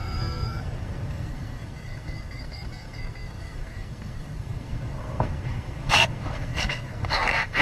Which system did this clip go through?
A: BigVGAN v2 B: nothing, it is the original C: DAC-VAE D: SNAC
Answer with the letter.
D